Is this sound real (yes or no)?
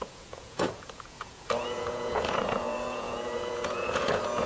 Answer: no